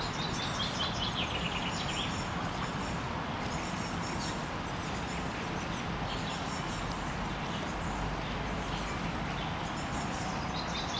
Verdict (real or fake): real